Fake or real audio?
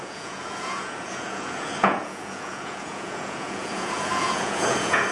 fake